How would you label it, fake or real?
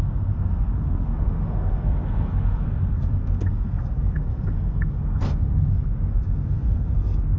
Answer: fake